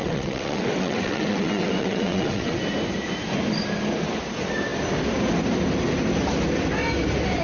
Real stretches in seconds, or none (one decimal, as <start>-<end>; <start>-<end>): 2.6-7.4